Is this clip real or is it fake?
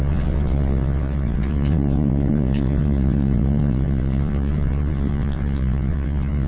fake